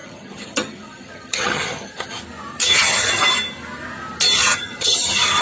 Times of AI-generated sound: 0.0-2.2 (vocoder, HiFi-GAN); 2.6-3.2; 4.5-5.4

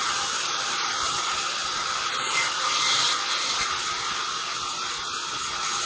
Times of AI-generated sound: none

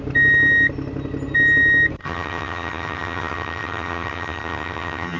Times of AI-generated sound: 2.0-5.2 (vocoder, HiFi-GAN)

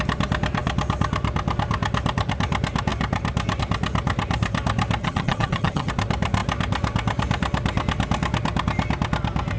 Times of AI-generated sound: 5.0-5.9 (vocoder, HiFi-GAN)

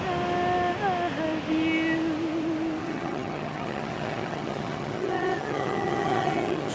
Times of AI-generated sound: 2.8-6.7 (vocoder, HiFi-GAN)

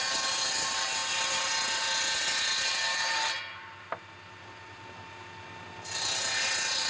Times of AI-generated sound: none

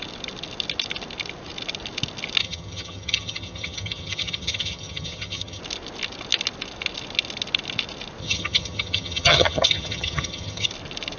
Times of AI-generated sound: 2.4-5.6 (vocoder, HiFi-GAN); 8.2-10.7